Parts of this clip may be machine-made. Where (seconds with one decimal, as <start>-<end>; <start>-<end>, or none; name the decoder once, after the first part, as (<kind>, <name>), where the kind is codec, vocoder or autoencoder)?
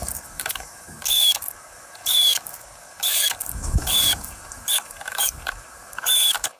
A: 0.0-6.6 (codec, DAC)